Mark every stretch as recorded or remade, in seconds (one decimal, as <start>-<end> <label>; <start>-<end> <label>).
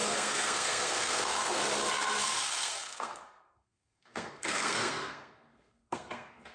0.0-1.6 remade; 1.6-2.2 recorded; 2.2-6.5 remade